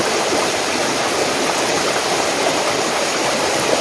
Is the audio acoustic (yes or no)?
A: yes